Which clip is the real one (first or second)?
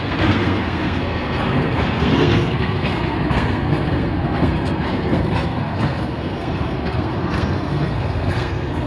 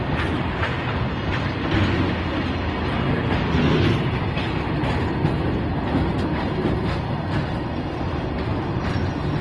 second